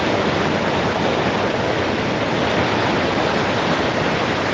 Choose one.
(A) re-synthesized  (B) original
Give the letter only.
B